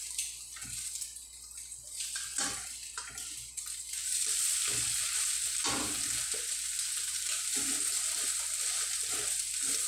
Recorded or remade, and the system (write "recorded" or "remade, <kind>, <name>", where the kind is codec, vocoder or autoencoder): recorded